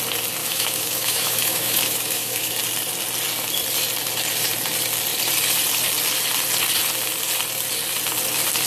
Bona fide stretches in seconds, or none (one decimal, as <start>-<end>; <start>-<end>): 0.0-0.4; 2.5-8.7